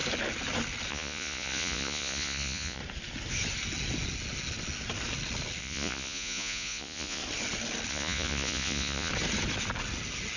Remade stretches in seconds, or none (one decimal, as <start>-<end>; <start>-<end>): 0.9-2.8; 5.6-7.2; 7.9-9.1